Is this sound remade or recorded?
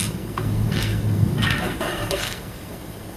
remade